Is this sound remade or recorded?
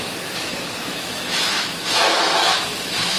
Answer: remade